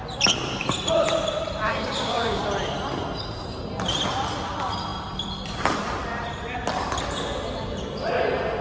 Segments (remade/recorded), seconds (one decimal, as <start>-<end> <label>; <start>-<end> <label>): 0.0-1.7 recorded; 1.7-2.4 remade; 2.4-8.6 recorded